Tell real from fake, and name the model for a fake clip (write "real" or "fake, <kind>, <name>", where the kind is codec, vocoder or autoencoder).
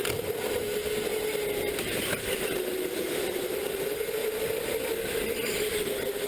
real